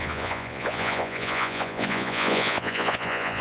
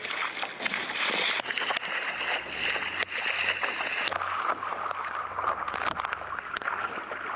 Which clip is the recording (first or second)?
second